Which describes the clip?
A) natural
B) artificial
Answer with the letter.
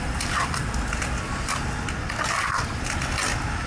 A